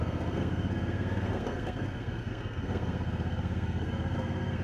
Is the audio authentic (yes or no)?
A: no